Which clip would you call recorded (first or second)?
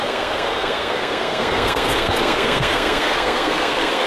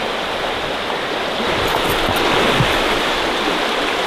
second